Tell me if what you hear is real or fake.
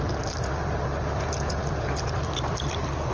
real